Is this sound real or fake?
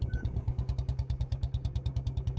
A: fake